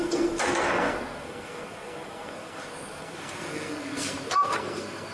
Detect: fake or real fake